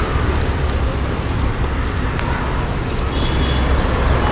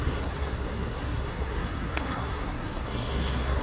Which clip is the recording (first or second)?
first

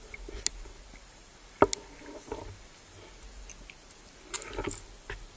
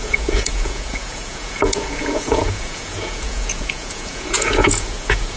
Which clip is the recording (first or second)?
first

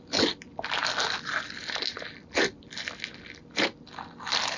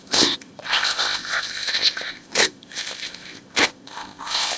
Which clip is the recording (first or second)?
first